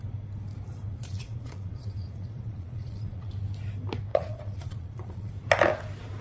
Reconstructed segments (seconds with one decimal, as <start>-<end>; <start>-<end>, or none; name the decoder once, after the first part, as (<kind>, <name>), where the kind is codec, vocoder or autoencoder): 0.9-3.3 (vocoder, Vocos); 4.1-5.3